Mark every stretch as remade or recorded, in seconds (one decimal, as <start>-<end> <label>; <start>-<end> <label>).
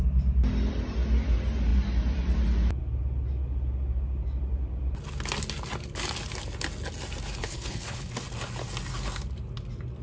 0.0-7.4 recorded; 7.4-8.1 remade; 8.1-10.0 recorded